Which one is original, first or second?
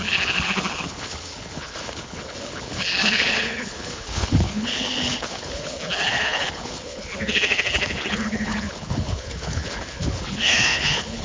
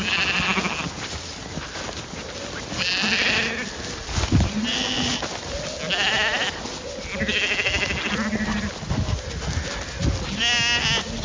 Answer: second